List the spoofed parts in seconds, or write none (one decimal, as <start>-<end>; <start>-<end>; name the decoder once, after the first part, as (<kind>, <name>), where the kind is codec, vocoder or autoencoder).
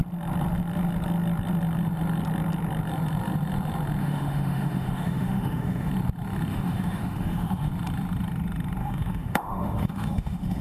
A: 4.0-5.9 (autoencoder, DAC-VAE); 6.5-7.7; 8.8-10.6